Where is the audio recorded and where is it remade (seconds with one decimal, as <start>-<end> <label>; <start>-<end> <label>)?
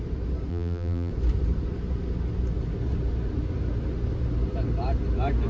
0.0-0.5 recorded; 0.5-1.1 remade; 1.1-5.5 recorded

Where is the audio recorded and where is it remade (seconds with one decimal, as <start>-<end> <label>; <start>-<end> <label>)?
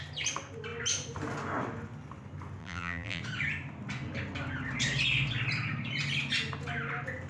0.0-2.6 recorded; 2.6-3.2 remade; 3.2-7.3 recorded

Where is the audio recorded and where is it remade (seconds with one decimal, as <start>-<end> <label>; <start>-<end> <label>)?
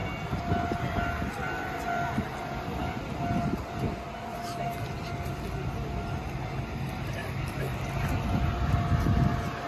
0.0-7.2 recorded; 7.2-8.7 remade; 8.7-9.7 recorded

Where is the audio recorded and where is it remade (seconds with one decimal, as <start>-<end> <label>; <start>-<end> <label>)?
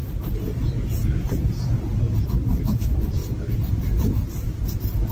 0.0-2.2 recorded; 2.2-3.2 remade; 3.2-3.7 recorded; 3.7-5.1 remade